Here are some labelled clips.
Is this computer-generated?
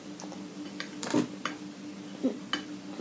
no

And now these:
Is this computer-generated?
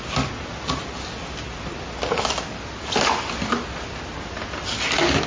no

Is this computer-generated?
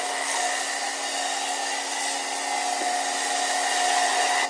no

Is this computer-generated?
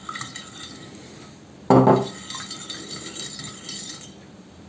no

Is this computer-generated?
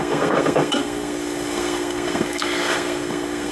yes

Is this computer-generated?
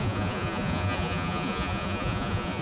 yes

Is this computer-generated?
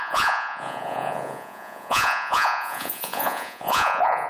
yes